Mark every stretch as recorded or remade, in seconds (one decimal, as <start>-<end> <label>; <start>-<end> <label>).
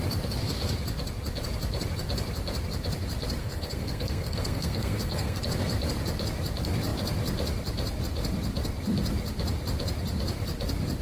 0.0-3.4 recorded; 3.4-5.4 remade; 5.4-11.0 recorded